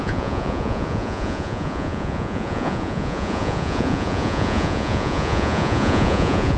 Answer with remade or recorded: remade